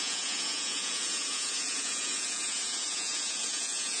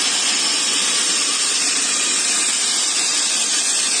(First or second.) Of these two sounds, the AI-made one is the first